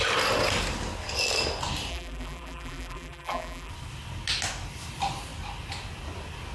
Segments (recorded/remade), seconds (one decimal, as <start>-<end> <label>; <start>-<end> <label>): 0.0-1.9 recorded; 1.9-3.7 remade; 3.7-6.5 recorded